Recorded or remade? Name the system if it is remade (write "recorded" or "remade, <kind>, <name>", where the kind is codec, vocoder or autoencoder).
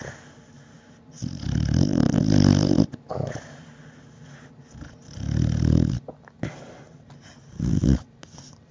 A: recorded